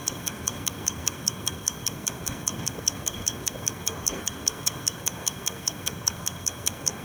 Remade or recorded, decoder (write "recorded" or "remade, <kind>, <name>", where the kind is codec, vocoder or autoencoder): remade, codec, SNAC